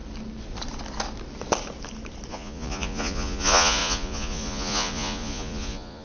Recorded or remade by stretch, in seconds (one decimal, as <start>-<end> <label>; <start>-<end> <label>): 0.0-2.3 recorded; 2.3-6.0 remade